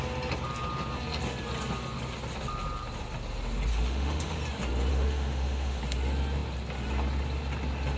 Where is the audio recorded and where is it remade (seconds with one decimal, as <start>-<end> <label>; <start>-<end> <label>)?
0.0-3.7 recorded; 3.7-4.4 remade; 4.4-4.9 recorded; 4.9-5.8 remade; 5.8-8.0 recorded